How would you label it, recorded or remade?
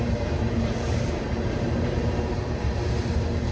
remade